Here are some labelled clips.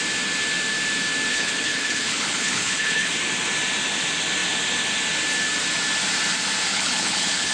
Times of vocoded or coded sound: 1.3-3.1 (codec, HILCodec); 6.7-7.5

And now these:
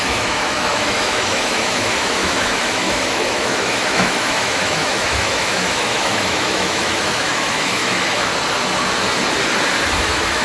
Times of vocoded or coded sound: 0.0-8.3 (autoencoder, DAC-VAE); 10.0-10.4

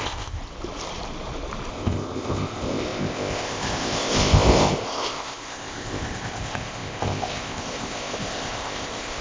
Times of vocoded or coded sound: 0.0-0.4 (codec, ZipCodec); 1.7-9.2

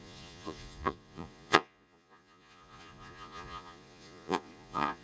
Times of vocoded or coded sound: 0.0-5.0 (vocoder, Vocos)